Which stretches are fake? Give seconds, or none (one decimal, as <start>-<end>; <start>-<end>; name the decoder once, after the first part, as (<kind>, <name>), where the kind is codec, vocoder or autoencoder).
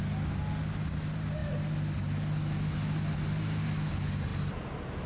none